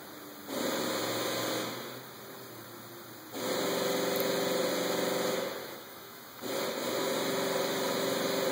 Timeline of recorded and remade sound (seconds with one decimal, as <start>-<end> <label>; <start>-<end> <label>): 0.0-5.6 recorded; 5.6-6.4 remade; 6.4-8.5 recorded